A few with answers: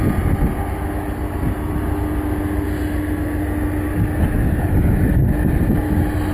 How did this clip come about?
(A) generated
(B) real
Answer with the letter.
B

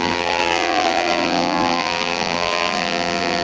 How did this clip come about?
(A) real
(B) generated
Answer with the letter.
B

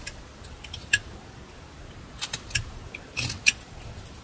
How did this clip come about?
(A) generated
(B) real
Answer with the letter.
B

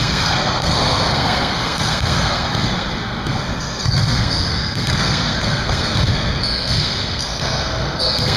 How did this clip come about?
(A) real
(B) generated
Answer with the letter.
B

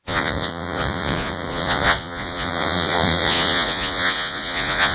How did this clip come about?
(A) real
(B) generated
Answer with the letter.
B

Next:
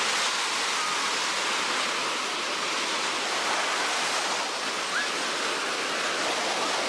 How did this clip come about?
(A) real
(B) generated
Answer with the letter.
A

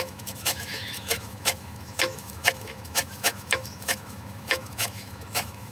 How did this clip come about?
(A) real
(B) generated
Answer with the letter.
B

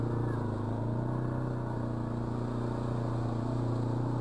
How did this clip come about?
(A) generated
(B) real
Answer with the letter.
B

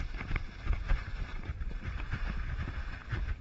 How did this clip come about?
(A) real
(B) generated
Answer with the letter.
A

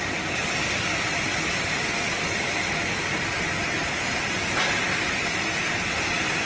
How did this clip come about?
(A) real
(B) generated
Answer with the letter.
B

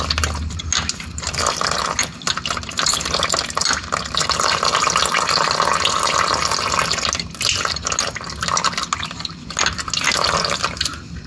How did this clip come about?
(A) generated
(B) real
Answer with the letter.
B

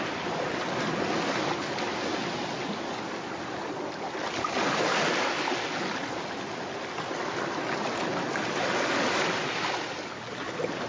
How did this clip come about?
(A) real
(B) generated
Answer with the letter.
A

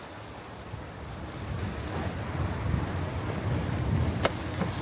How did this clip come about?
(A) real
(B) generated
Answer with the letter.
A